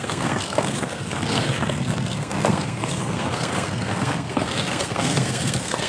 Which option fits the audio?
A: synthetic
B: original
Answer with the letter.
A